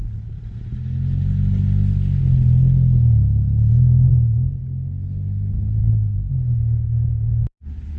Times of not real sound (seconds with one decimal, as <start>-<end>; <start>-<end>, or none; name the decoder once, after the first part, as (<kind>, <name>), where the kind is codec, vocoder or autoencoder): 5.8-6.3 (codec, HILCodec)